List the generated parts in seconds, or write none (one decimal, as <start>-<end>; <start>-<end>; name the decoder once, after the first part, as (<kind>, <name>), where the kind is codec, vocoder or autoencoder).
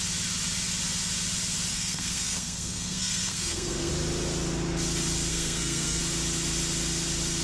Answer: 1.7-3.9 (codec, SNAC); 5.3-6.0